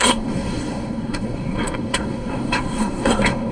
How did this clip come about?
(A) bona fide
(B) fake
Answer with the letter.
B